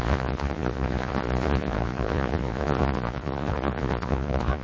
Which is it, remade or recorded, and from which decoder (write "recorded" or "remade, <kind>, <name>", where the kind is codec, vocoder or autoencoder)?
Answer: remade, vocoder, Vocos